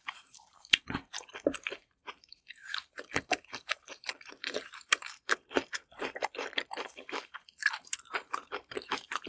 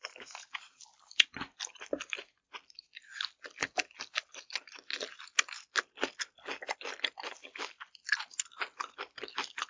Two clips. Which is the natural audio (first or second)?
second